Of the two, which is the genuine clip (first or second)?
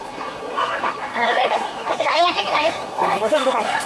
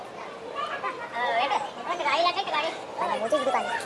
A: second